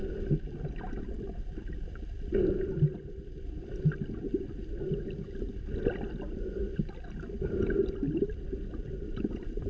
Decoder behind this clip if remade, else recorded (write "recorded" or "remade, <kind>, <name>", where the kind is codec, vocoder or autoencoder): recorded